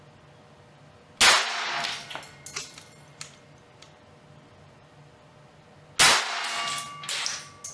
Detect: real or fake real